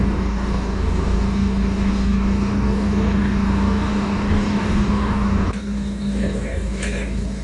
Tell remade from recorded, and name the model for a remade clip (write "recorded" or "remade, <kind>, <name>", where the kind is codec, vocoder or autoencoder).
remade, codec, DAC